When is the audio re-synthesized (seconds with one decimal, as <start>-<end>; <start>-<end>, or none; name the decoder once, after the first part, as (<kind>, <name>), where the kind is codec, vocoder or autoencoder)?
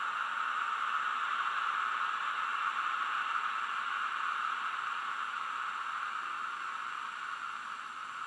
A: none